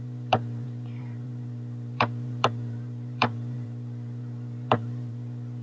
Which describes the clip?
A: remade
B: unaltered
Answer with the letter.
A